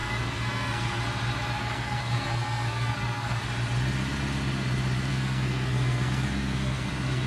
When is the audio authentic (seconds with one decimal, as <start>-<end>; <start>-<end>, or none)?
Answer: 1.0-1.6; 3.4-5.1